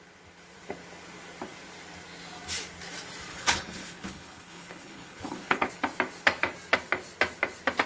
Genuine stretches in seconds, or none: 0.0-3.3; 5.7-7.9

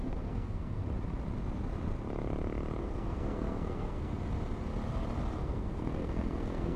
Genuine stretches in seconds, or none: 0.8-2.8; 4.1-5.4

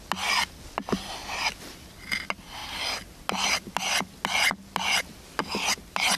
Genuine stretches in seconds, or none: 0.0-6.2